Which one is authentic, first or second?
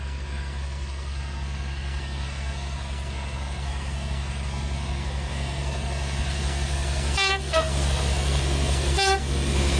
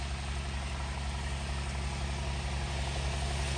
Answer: second